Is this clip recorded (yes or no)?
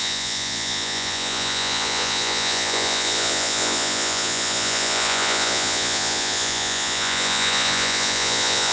no